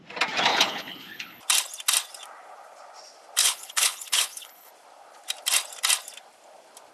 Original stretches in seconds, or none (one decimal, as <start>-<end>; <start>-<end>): 0.0-0.5; 1.4-3.4; 4.7-6.9

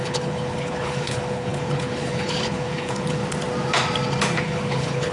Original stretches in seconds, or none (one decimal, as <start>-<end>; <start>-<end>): 3.2-4.4